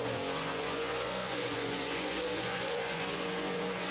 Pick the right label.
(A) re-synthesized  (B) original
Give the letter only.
A